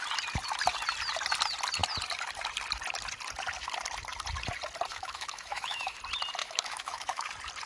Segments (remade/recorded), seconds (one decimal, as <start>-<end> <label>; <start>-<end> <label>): 0.0-4.9 recorded; 4.9-6.0 remade; 6.0-6.4 recorded; 6.4-7.3 remade; 7.3-7.7 recorded